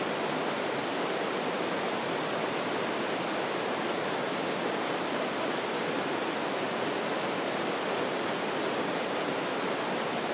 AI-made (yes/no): no